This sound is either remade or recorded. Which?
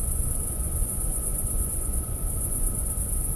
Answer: remade